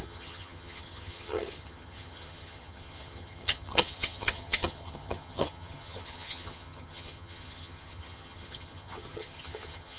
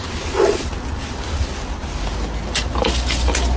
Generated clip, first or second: first